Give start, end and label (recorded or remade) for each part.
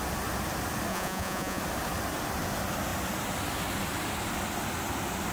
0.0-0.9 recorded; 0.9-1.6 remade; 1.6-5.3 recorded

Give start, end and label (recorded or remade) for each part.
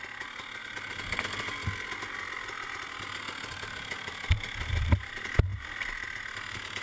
0.0-6.8 recorded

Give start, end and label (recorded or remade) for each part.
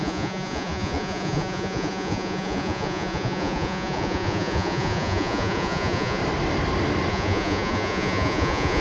0.0-6.2 remade; 6.2-7.1 recorded; 7.1-8.8 remade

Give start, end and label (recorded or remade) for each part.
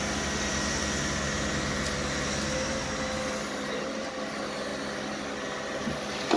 0.0-6.4 recorded